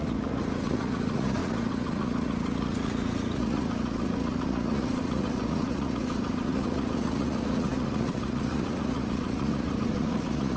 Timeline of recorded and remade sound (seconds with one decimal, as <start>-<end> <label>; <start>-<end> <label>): 0.0-10.6 remade